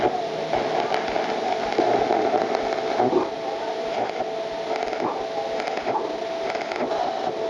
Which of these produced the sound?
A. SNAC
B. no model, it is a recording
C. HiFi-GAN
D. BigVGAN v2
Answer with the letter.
B